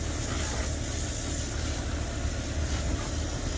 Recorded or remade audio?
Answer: recorded